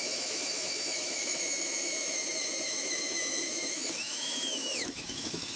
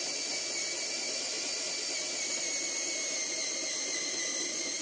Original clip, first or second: second